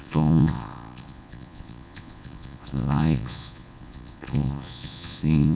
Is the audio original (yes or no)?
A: no